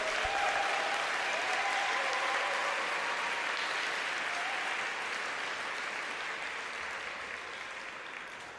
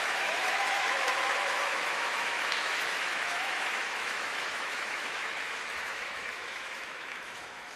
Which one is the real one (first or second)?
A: first